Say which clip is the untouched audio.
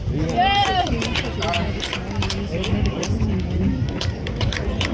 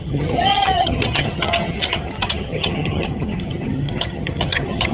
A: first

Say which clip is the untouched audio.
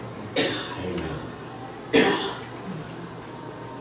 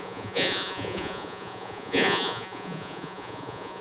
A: first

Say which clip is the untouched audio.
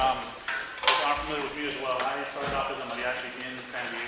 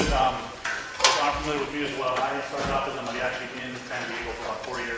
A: first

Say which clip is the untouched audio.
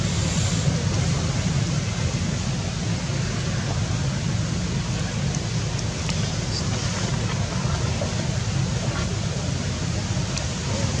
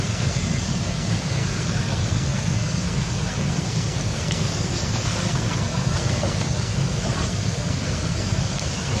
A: first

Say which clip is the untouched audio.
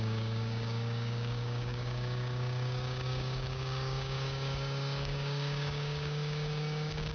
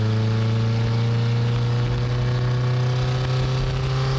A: second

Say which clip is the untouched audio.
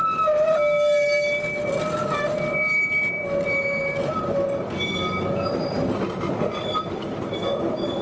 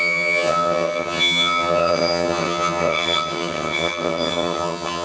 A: first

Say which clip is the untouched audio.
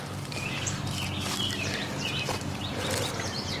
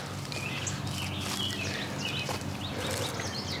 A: second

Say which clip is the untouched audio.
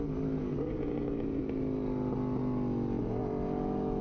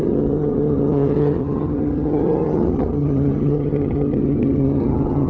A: first